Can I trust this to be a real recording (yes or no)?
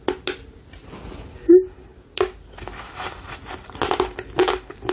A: yes